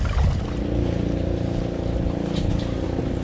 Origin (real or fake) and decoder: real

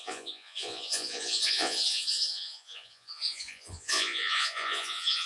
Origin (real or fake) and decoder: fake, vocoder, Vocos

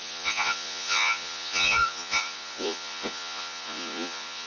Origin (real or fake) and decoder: fake, vocoder, Vocos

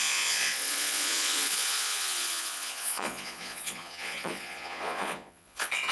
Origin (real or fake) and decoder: fake, vocoder, Vocos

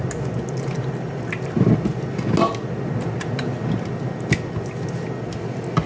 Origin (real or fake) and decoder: real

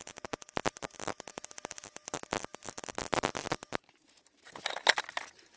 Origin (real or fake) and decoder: real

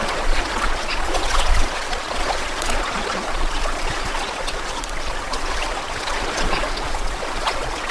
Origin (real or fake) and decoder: fake, vocoder, Vocos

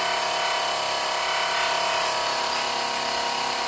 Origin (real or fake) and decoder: real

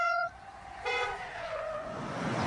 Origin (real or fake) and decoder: fake, vocoder, Vocos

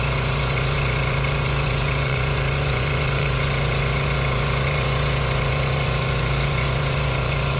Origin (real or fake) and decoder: fake, vocoder, Vocos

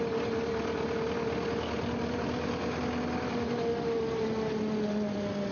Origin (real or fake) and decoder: real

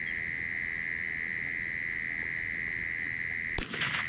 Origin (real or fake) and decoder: real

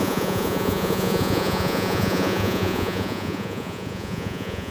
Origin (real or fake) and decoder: fake, vocoder, Vocos